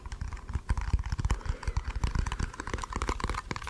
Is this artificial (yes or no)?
no